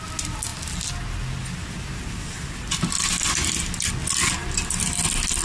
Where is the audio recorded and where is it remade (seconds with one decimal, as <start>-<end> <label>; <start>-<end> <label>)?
0.0-5.4 recorded